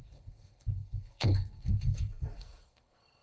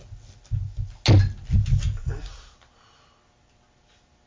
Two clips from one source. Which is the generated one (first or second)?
first